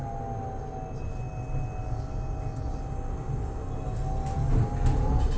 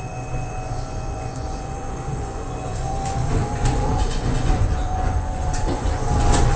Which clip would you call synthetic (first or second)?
second